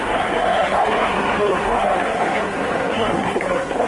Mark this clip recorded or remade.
remade